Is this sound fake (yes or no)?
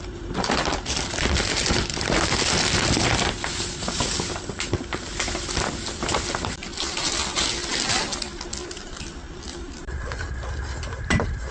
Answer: no